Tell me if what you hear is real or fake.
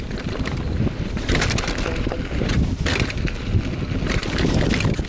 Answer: real